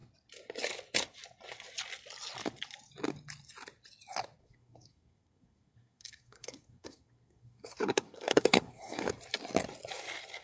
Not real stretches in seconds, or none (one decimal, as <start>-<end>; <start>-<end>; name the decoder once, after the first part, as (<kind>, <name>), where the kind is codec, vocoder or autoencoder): 4.4-9.1 (codec, SNAC)